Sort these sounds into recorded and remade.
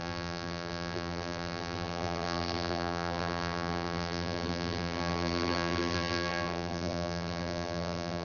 remade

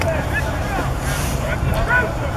remade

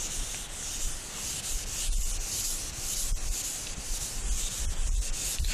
recorded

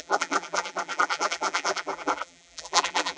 remade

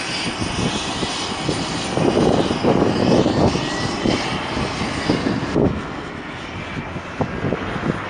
recorded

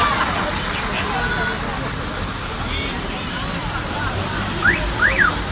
remade